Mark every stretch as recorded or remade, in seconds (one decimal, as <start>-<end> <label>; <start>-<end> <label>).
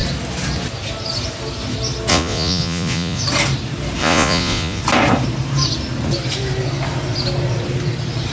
0.0-2.1 recorded; 2.1-3.2 remade; 3.2-4.0 recorded; 4.0-4.8 remade; 4.8-8.3 recorded